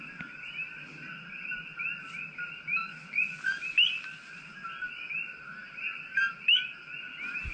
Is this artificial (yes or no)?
no